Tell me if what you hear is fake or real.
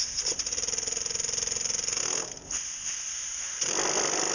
real